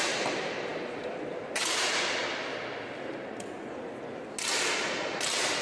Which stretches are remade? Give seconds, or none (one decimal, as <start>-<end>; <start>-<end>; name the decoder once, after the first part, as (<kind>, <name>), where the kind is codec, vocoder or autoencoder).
0.0-2.2 (vocoder, BigVGAN v2); 5.1-5.6